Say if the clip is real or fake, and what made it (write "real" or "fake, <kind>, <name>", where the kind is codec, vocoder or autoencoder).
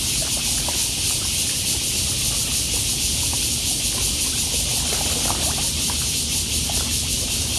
real